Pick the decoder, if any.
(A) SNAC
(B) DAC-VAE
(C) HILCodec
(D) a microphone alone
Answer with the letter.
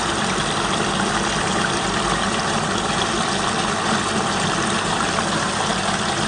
D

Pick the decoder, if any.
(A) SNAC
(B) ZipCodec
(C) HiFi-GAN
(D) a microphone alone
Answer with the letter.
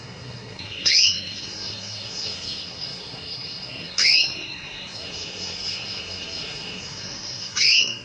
A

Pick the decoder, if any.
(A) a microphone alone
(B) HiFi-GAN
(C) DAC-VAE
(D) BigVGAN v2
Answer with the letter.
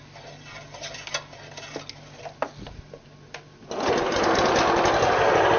A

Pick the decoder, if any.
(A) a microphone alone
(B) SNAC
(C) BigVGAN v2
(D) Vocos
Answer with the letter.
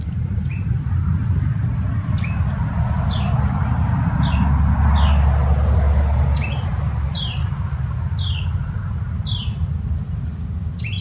A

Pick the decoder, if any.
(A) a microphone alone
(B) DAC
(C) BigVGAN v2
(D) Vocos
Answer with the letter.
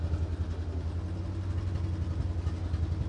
A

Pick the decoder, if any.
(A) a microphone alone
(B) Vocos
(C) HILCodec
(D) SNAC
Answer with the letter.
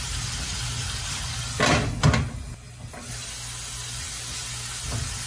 A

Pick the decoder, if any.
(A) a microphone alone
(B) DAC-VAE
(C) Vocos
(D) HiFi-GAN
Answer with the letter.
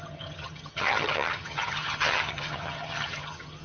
D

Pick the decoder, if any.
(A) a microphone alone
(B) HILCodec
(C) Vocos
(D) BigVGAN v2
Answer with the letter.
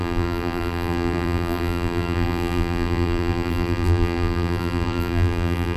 D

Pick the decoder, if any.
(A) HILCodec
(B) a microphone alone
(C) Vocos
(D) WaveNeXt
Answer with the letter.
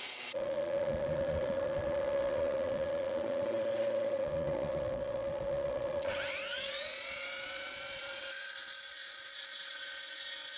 C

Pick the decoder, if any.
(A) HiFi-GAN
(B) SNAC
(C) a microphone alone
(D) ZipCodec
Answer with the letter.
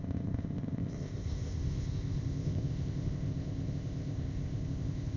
D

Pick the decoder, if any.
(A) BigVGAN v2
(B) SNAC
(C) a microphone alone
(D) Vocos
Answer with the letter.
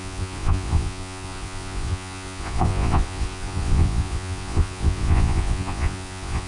D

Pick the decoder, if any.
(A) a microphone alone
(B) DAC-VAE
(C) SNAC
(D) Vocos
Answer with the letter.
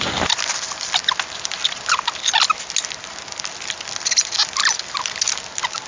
A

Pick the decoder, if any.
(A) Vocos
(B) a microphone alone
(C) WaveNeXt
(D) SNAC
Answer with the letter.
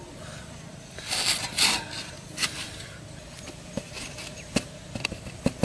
B